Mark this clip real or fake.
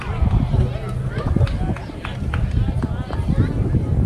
real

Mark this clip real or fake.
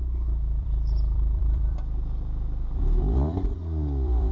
fake